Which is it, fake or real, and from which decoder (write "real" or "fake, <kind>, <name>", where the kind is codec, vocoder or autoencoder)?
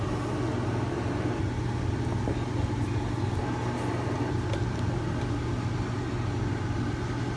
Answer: real